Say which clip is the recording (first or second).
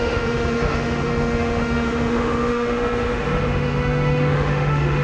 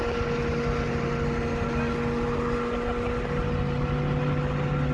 second